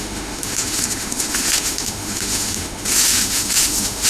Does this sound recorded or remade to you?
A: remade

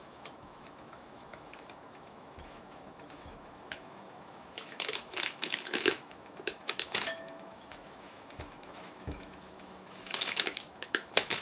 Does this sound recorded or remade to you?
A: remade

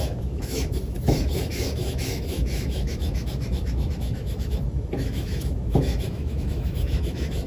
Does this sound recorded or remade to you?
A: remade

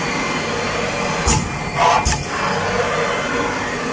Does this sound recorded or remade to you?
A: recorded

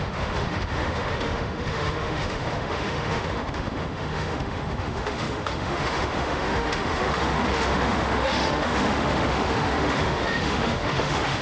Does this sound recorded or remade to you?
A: remade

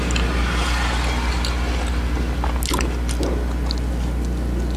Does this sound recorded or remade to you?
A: recorded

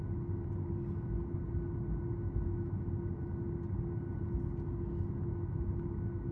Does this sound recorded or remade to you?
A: recorded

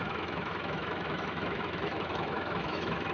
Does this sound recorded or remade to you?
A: remade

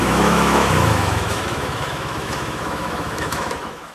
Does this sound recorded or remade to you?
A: remade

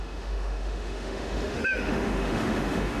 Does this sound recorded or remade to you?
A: remade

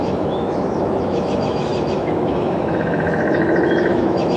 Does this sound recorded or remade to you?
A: remade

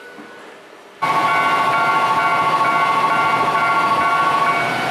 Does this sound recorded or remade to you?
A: recorded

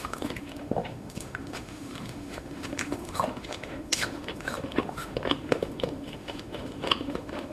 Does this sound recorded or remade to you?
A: remade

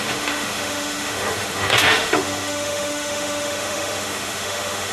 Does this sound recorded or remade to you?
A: remade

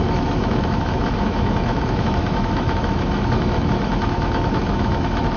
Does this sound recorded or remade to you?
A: remade